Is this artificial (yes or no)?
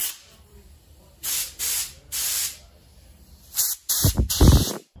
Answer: yes